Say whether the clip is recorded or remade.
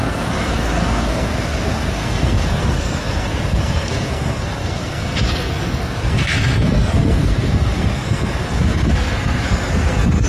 remade